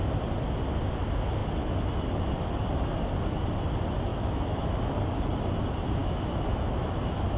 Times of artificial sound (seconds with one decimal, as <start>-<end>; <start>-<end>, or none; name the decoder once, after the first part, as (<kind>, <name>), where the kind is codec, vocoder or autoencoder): 4.1-4.9 (autoencoder, DAC-VAE); 6.0-6.9